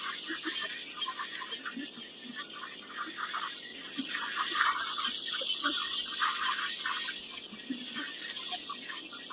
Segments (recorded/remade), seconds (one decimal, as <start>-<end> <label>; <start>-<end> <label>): 0.0-9.3 recorded